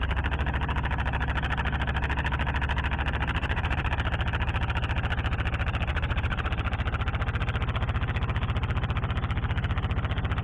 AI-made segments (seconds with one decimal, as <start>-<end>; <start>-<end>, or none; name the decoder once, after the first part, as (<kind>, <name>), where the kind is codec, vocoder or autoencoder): 3.4-3.9 (vocoder, Vocos); 5.9-6.5